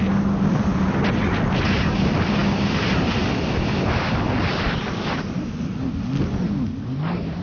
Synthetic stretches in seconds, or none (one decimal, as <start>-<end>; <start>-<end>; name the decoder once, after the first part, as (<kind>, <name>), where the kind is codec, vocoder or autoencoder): none